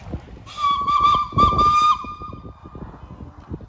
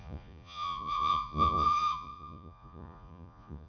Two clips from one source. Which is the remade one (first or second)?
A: second